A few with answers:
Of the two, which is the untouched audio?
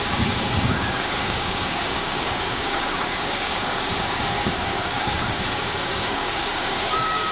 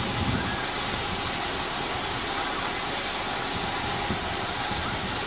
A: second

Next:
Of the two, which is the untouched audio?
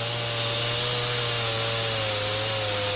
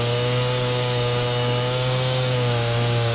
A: first